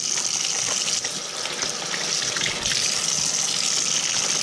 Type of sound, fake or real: real